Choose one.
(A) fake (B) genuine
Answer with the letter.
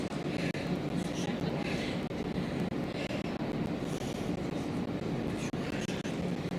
B